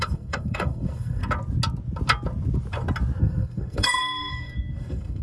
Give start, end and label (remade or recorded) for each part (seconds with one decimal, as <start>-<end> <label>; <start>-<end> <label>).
0.0-1.2 remade; 1.2-3.2 recorded; 3.2-5.2 remade

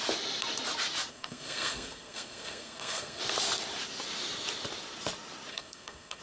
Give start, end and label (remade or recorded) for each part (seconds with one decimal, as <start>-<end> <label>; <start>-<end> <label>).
0.0-1.1 recorded; 1.1-3.2 remade; 3.2-5.5 recorded; 5.5-6.2 remade